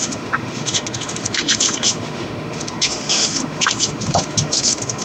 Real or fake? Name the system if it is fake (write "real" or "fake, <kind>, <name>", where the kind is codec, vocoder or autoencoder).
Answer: fake, autoencoder, DAC-VAE